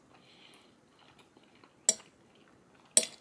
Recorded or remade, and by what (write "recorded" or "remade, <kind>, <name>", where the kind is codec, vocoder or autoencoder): recorded